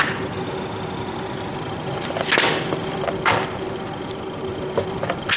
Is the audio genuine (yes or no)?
yes